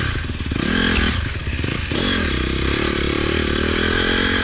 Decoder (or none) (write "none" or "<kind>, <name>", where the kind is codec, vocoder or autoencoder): none